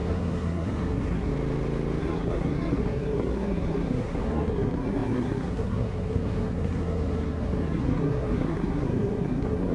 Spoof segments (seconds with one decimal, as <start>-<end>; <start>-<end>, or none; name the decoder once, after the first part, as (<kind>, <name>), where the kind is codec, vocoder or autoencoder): 0.0-1.3 (codec, SNAC); 2.0-9.7